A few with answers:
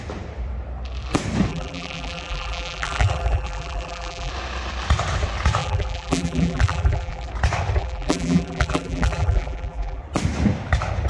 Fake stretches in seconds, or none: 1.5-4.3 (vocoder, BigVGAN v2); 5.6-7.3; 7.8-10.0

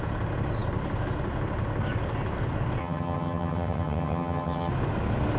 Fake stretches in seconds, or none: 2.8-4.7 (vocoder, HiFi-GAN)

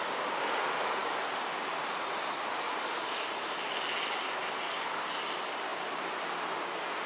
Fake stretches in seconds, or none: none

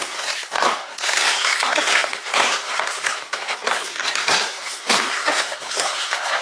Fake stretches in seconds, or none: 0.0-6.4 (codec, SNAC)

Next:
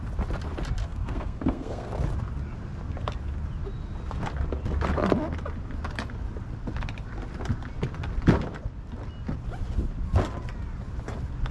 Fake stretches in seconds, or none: 0.8-1.9 (codec, SNAC)